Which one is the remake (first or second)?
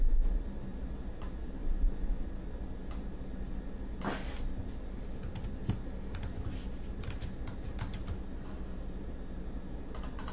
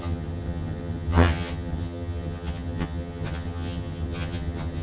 second